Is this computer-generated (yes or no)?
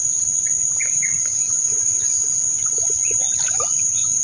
no